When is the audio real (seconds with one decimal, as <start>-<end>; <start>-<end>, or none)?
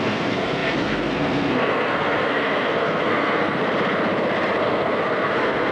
3.6-4.6